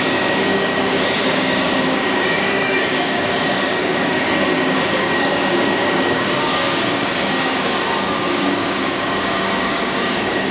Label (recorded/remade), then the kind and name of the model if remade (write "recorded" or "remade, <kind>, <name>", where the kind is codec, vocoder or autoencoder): remade, codec, DAC